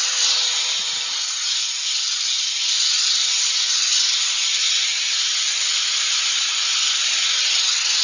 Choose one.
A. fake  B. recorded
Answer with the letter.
B